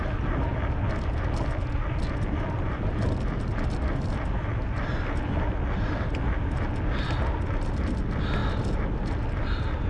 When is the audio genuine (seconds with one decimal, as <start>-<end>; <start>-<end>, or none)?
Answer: 0.0-9.9